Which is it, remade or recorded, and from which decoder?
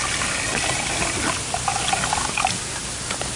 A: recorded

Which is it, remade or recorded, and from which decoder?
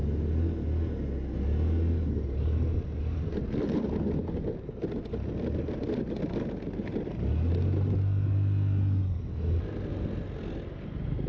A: recorded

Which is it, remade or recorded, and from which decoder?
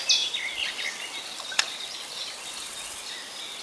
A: recorded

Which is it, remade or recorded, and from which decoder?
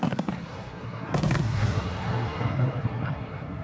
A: remade, codec, SNAC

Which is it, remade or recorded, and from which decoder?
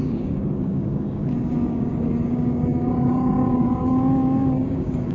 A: remade, codec, DAC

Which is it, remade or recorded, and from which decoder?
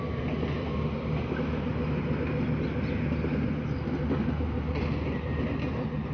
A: recorded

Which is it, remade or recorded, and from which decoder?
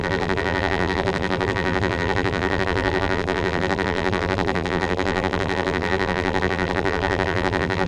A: remade, vocoder, BigVGAN v2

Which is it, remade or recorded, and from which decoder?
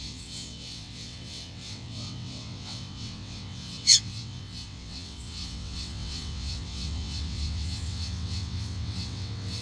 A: remade, vocoder, WaveNeXt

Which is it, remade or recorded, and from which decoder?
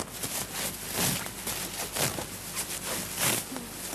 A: recorded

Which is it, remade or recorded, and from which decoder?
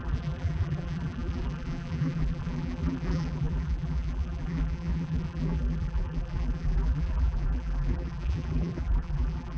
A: remade, vocoder, BigVGAN v2